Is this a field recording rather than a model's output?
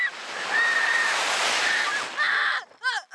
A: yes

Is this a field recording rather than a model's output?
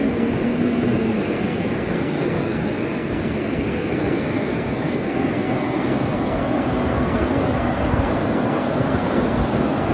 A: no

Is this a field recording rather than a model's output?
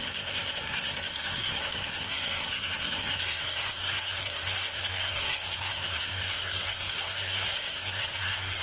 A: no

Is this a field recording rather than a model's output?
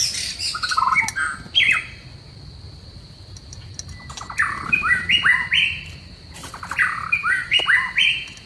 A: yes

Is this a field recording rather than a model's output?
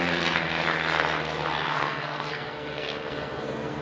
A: no